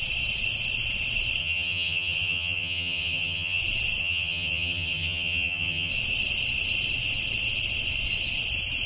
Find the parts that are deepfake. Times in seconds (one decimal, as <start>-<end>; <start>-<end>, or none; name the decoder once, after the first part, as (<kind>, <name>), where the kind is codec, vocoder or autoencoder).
1.4-3.6 (vocoder, HiFi-GAN); 4.0-5.9